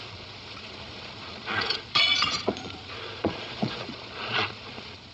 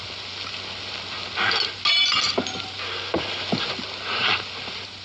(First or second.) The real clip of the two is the second